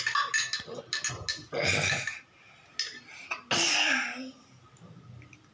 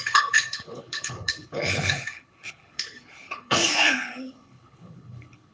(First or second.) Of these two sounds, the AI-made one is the second